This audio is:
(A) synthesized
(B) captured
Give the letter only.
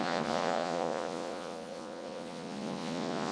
A